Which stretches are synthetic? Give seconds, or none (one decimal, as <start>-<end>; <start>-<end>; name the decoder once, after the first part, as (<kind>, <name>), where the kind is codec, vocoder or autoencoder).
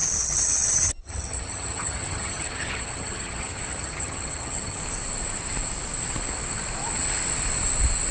0.0-4.8 (vocoder, HiFi-GAN)